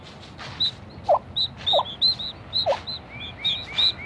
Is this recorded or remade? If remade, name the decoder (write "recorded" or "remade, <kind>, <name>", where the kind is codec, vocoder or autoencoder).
recorded